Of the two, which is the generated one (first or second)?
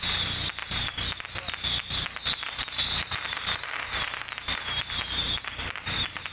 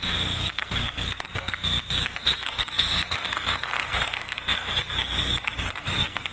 second